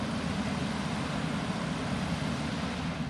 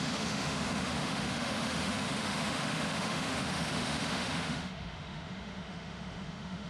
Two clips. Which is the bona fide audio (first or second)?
first